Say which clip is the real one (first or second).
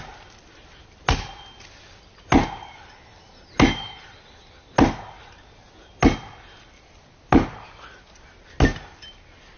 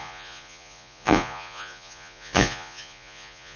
first